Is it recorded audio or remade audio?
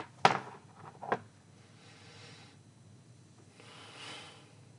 recorded